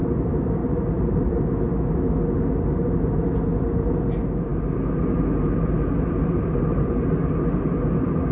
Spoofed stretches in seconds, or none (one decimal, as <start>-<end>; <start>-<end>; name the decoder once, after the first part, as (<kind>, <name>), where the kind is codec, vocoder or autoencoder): 0.6-1.3 (vocoder, BigVGAN v2)